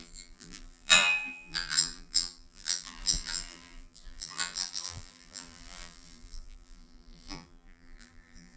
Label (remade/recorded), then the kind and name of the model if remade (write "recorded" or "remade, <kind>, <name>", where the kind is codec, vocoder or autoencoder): remade, vocoder, BigVGAN v2